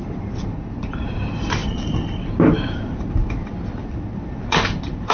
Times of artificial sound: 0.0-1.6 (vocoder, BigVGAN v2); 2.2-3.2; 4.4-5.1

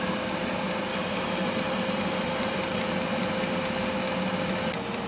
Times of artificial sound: 0.9-2.8 (vocoder, BigVGAN v2)

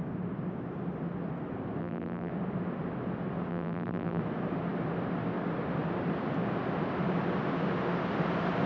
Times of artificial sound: 1.8-2.3 (vocoder, BigVGAN v2); 3.5-4.2

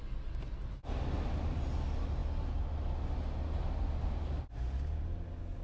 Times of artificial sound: none

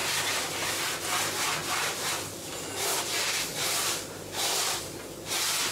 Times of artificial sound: 1.6-5.0 (vocoder, BigVGAN v2)

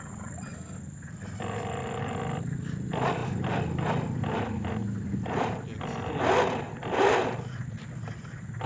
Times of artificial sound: none